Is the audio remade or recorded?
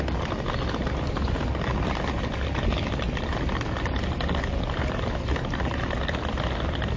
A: recorded